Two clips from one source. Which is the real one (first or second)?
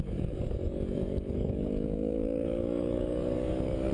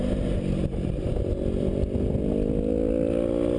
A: second